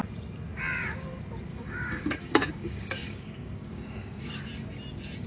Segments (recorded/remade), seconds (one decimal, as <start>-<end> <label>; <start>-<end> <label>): 0.0-1.5 recorded; 1.5-4.4 remade; 4.4-5.3 recorded